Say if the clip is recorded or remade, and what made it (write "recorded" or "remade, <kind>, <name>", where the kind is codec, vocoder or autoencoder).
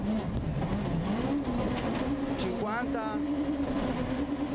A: recorded